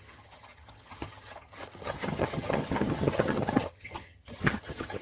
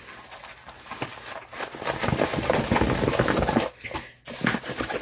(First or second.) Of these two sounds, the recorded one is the second